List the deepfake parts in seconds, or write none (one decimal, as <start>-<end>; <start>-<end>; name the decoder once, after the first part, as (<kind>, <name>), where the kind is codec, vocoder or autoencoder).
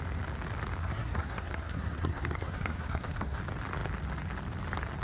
0.8-3.4 (codec, SNAC)